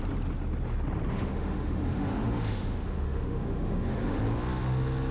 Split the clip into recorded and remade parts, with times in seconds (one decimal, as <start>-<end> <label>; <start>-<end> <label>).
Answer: 0.0-1.1 recorded; 1.1-4.2 remade; 4.2-5.1 recorded